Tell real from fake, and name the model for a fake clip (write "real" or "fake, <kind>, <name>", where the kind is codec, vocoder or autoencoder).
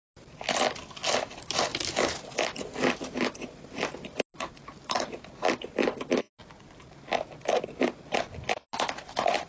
real